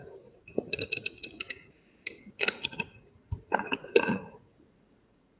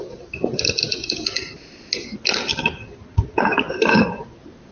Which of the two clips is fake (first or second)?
first